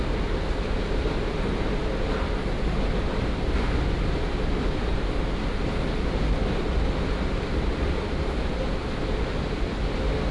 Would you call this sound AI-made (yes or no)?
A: no